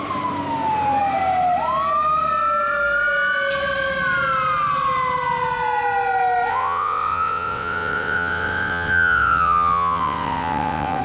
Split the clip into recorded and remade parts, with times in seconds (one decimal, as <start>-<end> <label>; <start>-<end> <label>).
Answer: 0.0-6.5 recorded; 6.5-11.0 remade